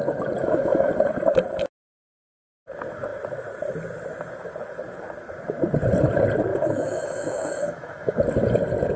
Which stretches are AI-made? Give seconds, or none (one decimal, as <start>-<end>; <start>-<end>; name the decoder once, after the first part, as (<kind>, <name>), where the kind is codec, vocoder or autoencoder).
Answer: 0.4-0.9 (autoencoder, DAC-VAE); 6.5-8.2